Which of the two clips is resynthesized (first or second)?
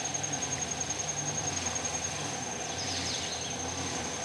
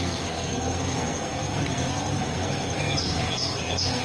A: second